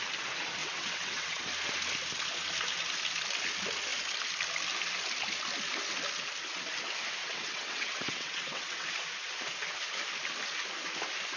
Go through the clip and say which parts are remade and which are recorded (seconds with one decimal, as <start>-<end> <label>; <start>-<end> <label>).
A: 0.0-0.6 recorded; 0.6-1.4 remade; 1.4-7.2 recorded; 7.2-8.7 remade; 8.7-11.4 recorded